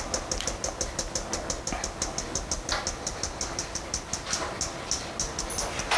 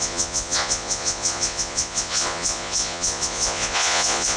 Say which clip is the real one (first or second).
first